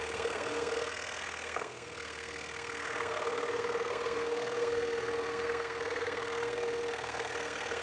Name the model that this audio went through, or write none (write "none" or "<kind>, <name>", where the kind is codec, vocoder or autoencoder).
codec, SNAC